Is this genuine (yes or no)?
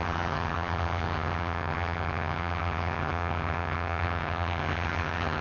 no